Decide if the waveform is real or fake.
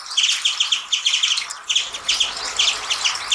real